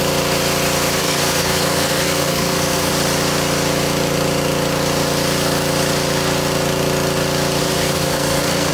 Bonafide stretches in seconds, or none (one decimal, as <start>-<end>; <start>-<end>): 0.0-1.0; 2.9-7.6